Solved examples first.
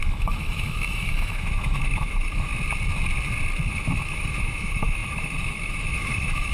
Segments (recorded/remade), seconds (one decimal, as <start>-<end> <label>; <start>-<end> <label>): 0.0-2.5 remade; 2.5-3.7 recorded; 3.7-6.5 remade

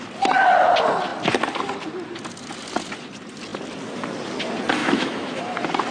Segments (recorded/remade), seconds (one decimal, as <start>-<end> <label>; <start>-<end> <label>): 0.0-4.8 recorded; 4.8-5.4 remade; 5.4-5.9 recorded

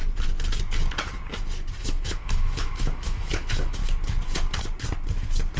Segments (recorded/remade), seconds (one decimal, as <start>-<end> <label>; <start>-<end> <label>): 0.0-1.8 recorded; 1.8-3.8 remade; 3.8-5.6 recorded

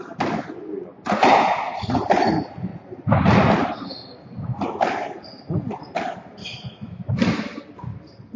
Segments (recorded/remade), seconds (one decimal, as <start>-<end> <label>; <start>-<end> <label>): 0.0-6.4 recorded; 6.4-7.1 remade; 7.1-8.4 recorded